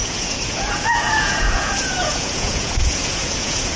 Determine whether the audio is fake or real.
fake